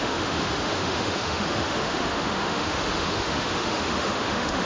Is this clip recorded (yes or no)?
no